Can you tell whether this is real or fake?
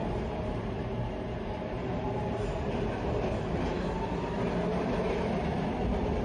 real